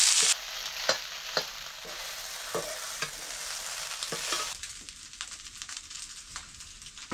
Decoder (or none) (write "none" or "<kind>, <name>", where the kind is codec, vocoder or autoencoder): none